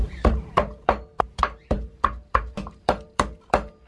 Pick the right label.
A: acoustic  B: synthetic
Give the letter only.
B